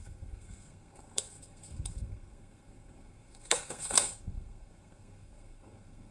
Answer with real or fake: fake